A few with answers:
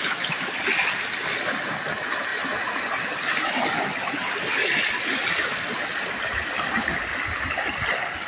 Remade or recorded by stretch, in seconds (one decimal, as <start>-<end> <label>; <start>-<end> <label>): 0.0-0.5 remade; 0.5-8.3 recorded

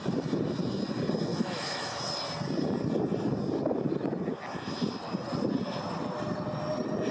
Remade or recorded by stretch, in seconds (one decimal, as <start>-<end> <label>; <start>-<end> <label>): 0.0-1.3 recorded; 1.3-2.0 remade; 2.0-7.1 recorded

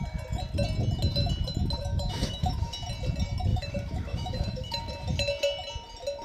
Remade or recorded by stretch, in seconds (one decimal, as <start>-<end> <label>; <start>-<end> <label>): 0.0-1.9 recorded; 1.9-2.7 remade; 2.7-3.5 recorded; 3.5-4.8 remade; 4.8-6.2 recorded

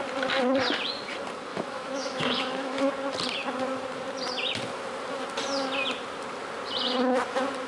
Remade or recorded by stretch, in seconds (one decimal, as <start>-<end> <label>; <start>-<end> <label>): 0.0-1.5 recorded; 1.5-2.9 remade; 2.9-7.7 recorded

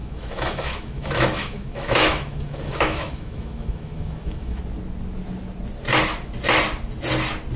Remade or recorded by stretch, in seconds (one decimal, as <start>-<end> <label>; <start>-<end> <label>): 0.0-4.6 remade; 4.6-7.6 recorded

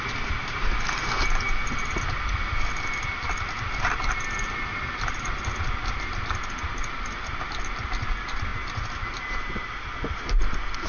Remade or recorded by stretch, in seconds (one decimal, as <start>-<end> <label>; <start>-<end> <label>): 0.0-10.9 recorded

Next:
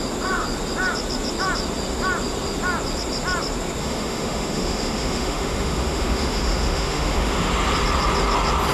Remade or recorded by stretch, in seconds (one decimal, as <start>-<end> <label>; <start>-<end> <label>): 0.0-3.8 recorded; 3.8-7.5 remade; 7.5-8.7 recorded